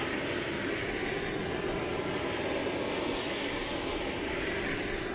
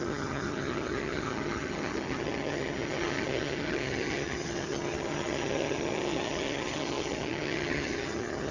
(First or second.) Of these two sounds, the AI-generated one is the second